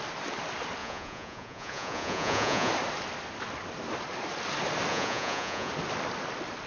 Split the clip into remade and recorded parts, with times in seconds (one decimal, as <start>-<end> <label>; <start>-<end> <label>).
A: 0.0-0.8 recorded; 0.8-2.7 remade; 2.7-4.9 recorded; 4.9-5.7 remade; 5.7-6.7 recorded